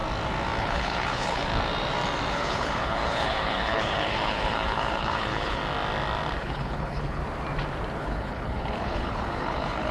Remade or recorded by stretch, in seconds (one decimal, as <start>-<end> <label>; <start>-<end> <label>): 0.0-0.6 recorded; 0.6-1.5 remade; 1.5-2.3 recorded; 2.3-5.6 remade; 5.6-6.4 recorded; 6.4-7.2 remade; 7.2-8.0 recorded; 8.0-9.9 remade